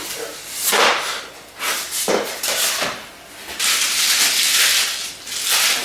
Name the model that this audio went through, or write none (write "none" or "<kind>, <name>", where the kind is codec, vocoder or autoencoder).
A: none